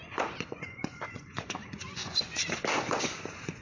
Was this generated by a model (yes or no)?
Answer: yes